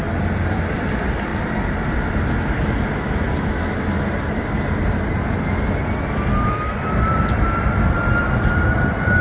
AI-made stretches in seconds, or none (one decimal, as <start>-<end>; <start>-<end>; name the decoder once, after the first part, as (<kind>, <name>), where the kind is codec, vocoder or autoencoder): 0.0-1.3 (vocoder, BigVGAN v2); 6.0-9.2